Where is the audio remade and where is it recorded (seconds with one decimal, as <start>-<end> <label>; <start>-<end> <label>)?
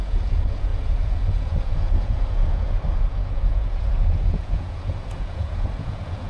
0.0-6.3 remade